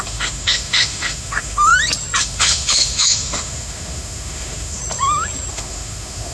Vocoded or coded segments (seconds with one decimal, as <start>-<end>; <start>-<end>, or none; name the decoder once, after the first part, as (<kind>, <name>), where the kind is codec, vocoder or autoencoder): 0.0-1.7 (autoencoder, DAC-VAE); 2.2-4.8; 5.5-6.3